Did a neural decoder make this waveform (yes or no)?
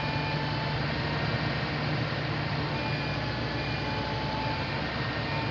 no